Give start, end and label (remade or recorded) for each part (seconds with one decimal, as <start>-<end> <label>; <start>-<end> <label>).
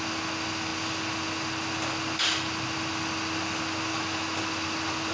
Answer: 0.0-3.9 recorded; 3.9-4.4 remade; 4.4-5.1 recorded